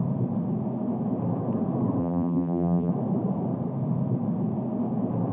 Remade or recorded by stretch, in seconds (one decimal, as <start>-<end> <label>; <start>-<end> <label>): 0.0-2.0 recorded; 2.0-2.9 remade; 2.9-5.3 recorded